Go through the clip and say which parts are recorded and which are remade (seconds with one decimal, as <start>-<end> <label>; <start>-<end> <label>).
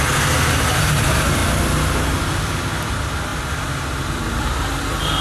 0.0-5.2 recorded